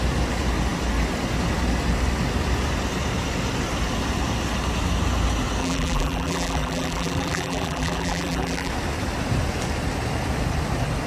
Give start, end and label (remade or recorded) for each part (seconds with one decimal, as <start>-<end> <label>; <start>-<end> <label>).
0.0-5.6 recorded; 5.6-8.7 remade; 8.7-11.1 recorded